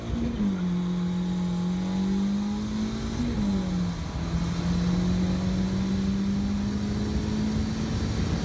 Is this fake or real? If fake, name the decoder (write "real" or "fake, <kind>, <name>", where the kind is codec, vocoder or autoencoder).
real